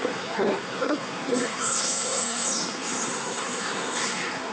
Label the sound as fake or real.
fake